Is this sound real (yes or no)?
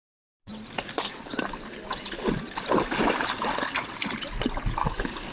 yes